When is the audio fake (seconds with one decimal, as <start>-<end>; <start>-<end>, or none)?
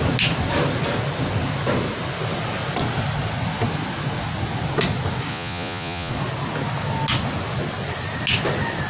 5.3-6.1